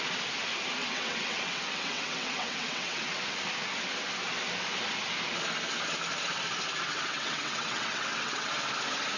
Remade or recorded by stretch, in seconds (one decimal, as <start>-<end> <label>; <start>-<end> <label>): 0.0-0.8 recorded; 0.8-3.1 remade; 3.1-6.9 recorded; 6.9-8.5 remade; 8.5-9.2 recorded